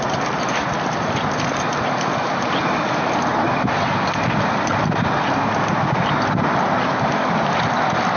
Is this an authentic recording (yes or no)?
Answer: yes